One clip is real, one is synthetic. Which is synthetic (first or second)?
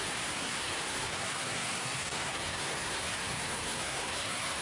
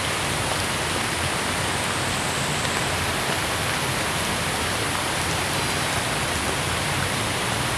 first